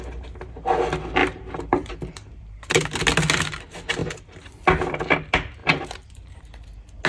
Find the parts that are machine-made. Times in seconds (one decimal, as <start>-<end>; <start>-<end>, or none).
1.2-2.8; 5.6-6.4